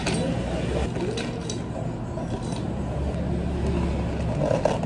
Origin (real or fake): real